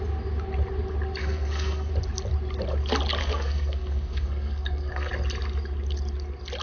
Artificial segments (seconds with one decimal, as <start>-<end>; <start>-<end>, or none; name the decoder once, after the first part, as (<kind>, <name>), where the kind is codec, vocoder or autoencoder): 1.2-1.9 (codec, SNAC); 3.2-5.1